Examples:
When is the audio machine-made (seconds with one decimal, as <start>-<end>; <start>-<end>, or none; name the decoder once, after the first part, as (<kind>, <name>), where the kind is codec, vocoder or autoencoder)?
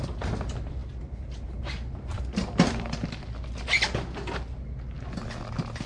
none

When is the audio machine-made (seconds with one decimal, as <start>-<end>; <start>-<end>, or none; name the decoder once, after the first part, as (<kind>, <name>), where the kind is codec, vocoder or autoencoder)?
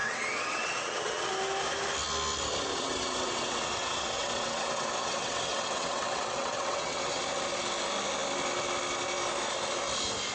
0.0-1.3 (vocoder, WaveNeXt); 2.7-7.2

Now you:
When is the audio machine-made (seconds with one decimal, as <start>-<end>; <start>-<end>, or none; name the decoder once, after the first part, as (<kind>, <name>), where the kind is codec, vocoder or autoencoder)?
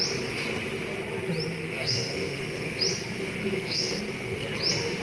1.6-2.8 (codec, SNAC); 3.4-4.0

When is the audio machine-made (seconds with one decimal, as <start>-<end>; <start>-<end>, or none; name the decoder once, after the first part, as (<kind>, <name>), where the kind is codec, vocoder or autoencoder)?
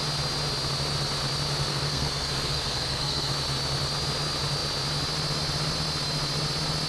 1.7-3.3 (codec, SNAC)